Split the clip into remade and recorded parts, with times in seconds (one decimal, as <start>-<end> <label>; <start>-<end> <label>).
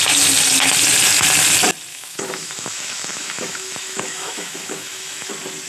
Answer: 0.0-1.9 recorded; 1.9-5.3 remade; 5.3-5.7 recorded